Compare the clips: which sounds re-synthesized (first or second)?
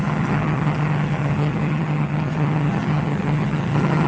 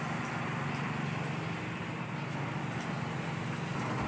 first